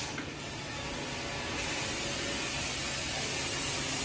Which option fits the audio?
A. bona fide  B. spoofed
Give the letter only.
A